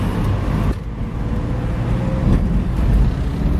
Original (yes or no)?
yes